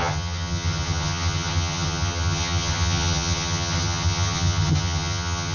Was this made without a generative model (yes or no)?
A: no